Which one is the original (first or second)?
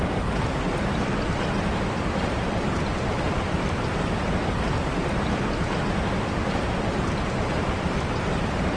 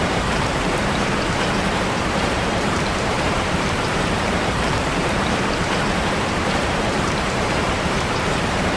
first